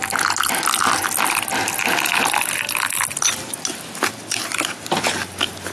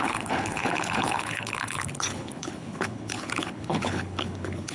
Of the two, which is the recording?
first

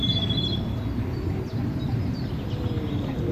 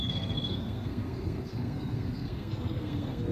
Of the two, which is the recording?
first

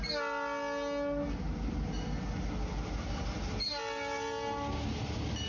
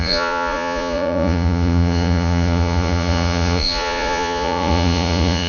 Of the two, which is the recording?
first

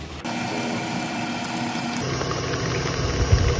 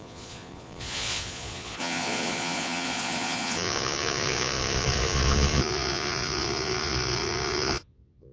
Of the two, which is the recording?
first